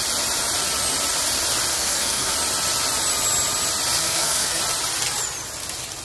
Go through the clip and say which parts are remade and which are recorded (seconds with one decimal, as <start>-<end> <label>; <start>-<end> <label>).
0.0-1.7 recorded; 1.7-2.3 remade; 2.3-4.0 recorded; 4.0-4.6 remade; 4.6-6.0 recorded